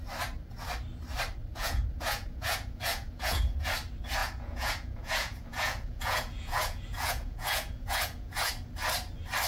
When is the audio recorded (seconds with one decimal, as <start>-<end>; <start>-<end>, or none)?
0.0-1.5; 3.7-4.2; 8.5-9.5